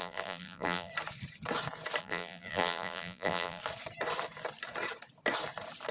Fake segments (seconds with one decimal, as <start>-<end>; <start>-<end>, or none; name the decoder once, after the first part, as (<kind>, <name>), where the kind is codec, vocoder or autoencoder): 0.0-0.9 (vocoder, BigVGAN v2); 2.0-3.6